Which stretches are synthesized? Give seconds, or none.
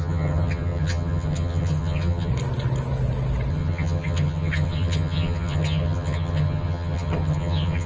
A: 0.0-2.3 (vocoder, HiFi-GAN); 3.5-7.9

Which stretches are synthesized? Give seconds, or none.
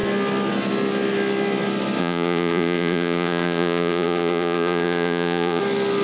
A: 2.0-5.6 (vocoder, Vocos)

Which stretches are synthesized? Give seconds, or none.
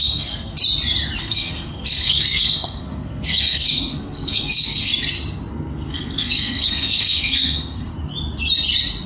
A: 0.0-0.6 (codec, SNAC); 1.2-4.9; 5.5-7.9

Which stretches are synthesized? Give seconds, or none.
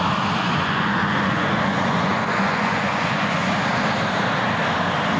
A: 0.4-3.5 (vocoder, Vocos)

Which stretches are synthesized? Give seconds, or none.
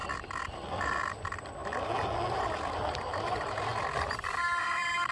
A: 0.5-1.6 (vocoder, BigVGAN v2); 2.4-3.7; 4.6-5.1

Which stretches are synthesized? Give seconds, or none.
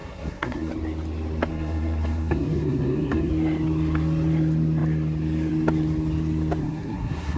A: 0.0-0.7 (codec, SNAC); 1.5-3.3; 6.6-7.4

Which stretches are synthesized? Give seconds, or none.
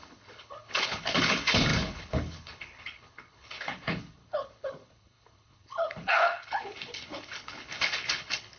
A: 0.0-8.6 (codec, HILCodec)